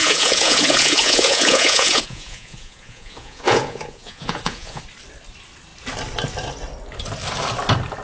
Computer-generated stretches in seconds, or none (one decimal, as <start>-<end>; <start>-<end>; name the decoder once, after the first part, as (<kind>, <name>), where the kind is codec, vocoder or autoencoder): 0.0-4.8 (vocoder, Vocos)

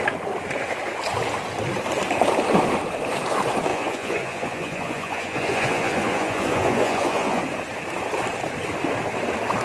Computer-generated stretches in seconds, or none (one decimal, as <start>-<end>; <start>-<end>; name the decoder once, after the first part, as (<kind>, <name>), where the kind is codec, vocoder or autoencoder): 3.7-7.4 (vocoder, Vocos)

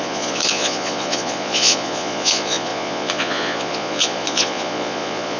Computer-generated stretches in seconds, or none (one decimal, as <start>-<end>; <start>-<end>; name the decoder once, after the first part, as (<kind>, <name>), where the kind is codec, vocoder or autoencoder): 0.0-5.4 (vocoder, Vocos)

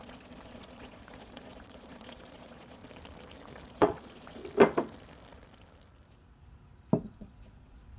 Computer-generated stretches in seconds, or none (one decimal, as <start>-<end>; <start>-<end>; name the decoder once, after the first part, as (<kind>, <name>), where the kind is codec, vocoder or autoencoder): 0.0-2.8 (vocoder, Vocos); 3.7-4.4; 7.0-8.0

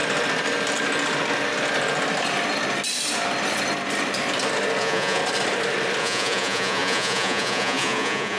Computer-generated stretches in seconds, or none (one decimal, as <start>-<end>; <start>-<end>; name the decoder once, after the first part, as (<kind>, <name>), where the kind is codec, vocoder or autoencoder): 4.8-5.2 (vocoder, Vocos); 6.0-8.4

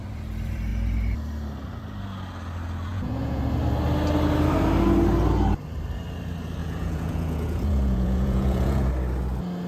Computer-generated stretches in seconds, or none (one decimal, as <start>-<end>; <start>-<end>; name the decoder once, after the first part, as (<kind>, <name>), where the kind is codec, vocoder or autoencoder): 2.9-3.4 (vocoder, Vocos); 6.6-8.9

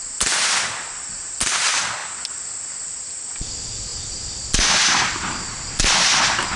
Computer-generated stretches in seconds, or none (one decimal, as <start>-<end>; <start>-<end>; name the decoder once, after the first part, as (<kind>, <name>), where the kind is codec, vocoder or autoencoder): none